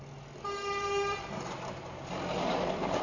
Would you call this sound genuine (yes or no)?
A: yes